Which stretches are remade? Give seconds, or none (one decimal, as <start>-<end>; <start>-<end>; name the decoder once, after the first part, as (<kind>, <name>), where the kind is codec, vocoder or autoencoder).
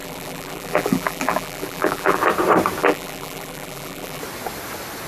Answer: 0.0-2.2 (vocoder, BigVGAN v2); 2.8-4.2